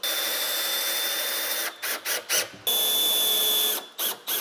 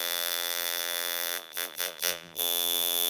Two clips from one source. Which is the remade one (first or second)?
second